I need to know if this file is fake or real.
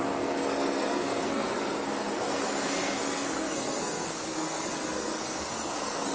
fake